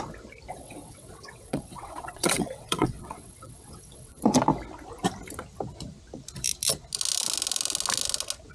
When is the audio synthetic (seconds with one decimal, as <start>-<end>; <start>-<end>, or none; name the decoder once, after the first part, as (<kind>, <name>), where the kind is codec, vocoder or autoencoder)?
0.5-4.2 (vocoder, WaveNeXt)

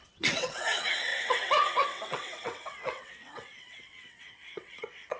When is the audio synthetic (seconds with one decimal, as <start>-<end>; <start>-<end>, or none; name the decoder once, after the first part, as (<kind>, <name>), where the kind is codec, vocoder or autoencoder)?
0.0-5.2 (vocoder, WaveNeXt)

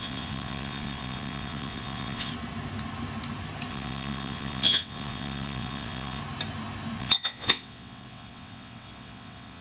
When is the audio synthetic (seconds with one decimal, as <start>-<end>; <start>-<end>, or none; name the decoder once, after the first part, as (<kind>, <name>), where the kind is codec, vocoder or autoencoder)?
0.0-2.3 (vocoder, WaveNeXt); 3.7-6.2; 7.0-9.6

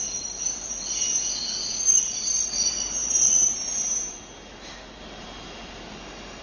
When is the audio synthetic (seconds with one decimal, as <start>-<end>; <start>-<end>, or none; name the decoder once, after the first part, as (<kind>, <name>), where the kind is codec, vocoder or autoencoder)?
none

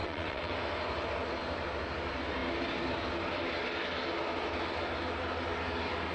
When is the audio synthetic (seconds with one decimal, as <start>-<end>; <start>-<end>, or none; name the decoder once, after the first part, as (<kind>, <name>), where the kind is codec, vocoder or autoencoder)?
0.0-0.5 (vocoder, WaveNeXt)

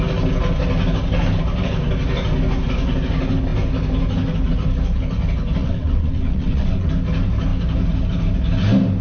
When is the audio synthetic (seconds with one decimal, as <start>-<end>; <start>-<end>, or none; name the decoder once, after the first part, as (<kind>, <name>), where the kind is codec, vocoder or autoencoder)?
5.6-6.9 (vocoder, WaveNeXt)

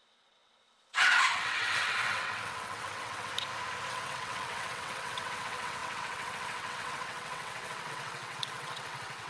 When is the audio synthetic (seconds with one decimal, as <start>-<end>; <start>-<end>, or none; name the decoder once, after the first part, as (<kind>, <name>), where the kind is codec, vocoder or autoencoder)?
0.0-3.3 (vocoder, WaveNeXt); 3.9-9.3